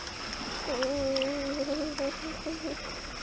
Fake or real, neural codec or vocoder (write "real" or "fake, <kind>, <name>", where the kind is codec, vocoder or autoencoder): real